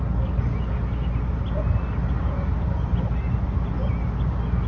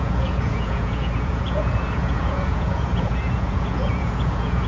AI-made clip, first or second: second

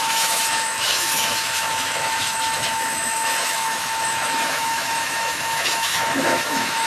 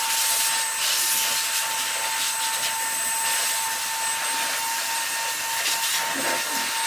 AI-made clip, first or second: first